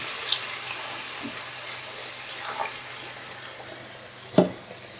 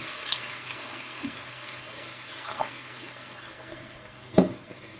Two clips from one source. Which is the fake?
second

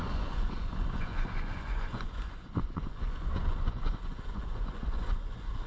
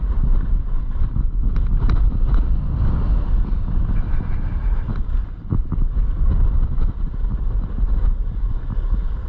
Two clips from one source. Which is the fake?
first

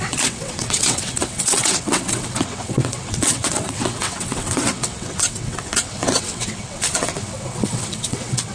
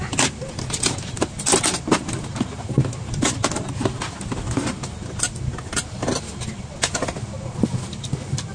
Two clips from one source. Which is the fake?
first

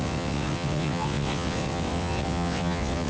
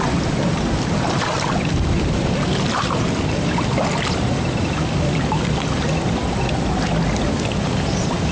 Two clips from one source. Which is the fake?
first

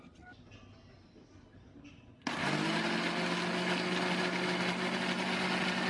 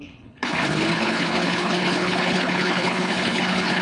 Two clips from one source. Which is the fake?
second